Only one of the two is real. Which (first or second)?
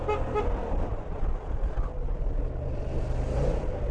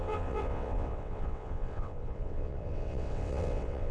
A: first